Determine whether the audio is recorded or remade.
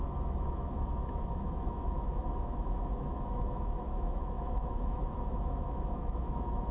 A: remade